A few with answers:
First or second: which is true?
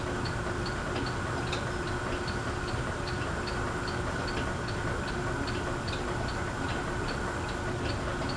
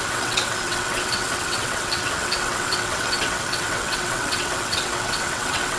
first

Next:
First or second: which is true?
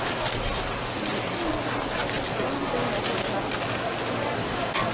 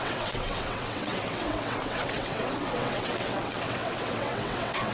first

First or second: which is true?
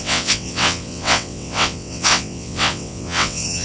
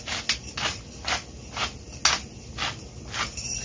second